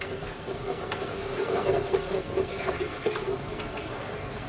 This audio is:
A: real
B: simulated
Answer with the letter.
B